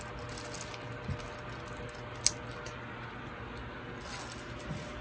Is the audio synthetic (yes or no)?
no